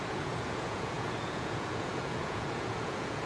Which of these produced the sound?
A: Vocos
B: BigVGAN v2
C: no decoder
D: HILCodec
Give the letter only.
A